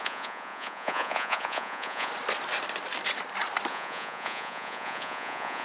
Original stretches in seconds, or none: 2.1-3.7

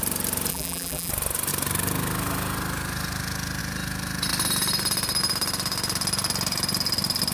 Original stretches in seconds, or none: 0.0-0.5; 1.1-7.3

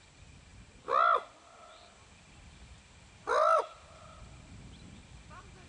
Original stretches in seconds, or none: 0.0-5.7

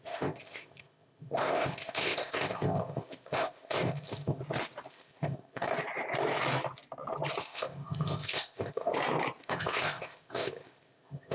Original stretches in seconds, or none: 4.4-4.9; 5.7-7.4; 8.9-9.4